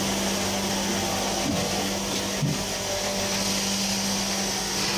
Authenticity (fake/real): real